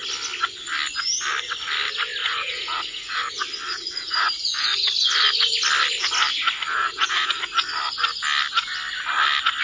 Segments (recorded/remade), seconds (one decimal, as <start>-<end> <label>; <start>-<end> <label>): 0.0-2.2 recorded; 2.2-3.3 remade; 3.3-3.7 recorded; 3.7-4.9 remade; 4.9-6.7 recorded; 6.7-7.4 remade; 7.4-9.6 recorded